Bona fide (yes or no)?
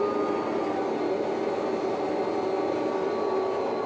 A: yes